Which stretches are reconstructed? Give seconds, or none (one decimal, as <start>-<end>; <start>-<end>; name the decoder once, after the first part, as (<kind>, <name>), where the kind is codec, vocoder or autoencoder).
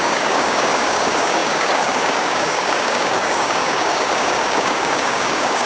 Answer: 0.0-5.7 (codec, DAC)